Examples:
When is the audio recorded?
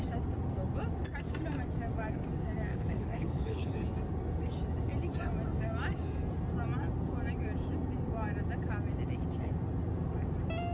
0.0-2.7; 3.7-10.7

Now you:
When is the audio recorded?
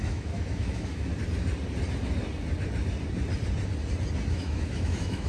1.1-4.3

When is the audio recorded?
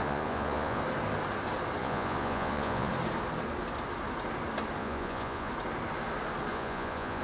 0.8-1.8; 2.9-4.8; 5.5-6.5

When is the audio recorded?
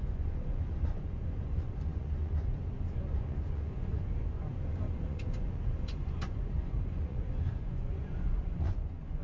none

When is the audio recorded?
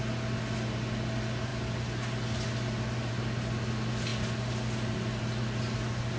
0.0-6.2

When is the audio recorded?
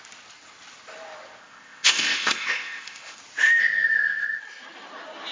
0.0-1.4; 3.2-3.6; 4.4-5.3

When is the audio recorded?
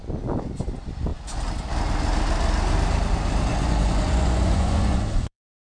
0.0-3.5